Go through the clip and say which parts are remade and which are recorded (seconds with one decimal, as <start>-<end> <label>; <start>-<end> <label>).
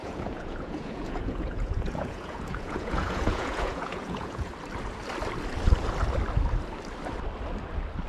0.0-4.5 remade; 4.5-8.1 recorded